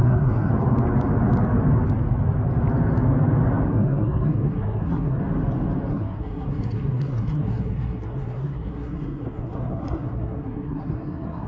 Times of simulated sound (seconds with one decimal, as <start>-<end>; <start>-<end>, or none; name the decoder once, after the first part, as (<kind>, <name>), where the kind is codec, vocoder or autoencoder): 0.0-0.5 (codec, SNAC); 3.7-5.2; 5.9-11.5